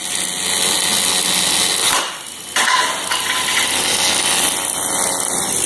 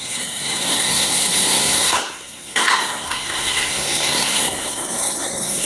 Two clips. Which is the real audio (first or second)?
first